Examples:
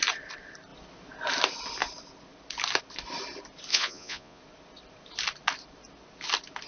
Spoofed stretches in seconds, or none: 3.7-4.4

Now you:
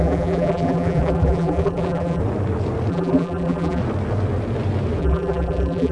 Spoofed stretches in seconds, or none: 0.0-2.2; 2.9-3.8; 5.0-5.9

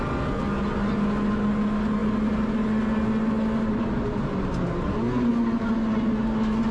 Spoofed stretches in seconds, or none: none

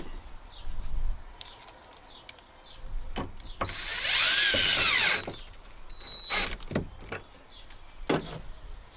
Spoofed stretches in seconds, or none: none

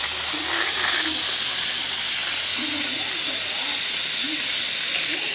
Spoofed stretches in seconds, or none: none

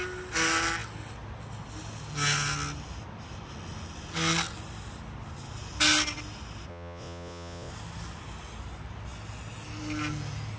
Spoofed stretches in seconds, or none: 6.7-7.7

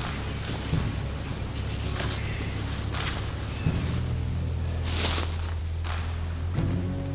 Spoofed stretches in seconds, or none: none

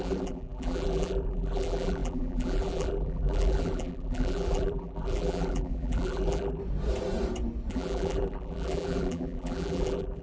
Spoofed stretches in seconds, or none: 0.0-6.6; 7.7-10.2